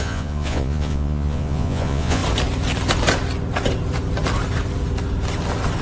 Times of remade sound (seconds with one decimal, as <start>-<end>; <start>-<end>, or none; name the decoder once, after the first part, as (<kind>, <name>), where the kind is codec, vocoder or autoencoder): 0.0-2.2 (vocoder, Vocos)